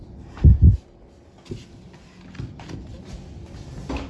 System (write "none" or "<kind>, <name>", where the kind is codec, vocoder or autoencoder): none